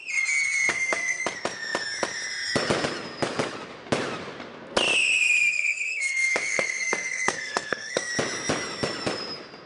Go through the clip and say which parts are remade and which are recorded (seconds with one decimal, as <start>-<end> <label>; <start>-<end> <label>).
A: 0.0-0.7 recorded; 0.7-1.2 remade; 1.2-5.5 recorded; 5.5-8.1 remade; 8.1-9.7 recorded